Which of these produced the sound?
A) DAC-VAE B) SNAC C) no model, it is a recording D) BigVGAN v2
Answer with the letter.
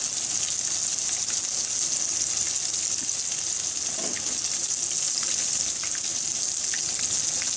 C